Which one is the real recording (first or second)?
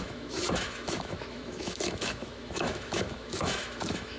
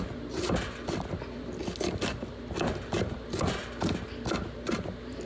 second